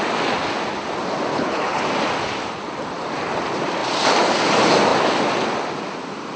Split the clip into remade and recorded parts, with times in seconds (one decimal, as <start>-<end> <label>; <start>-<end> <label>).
0.0-1.3 recorded; 1.3-1.8 remade; 1.8-6.4 recorded